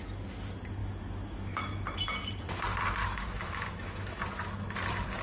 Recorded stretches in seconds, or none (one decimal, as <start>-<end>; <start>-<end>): 0.0-0.8; 2.0-3.0; 4.2-5.2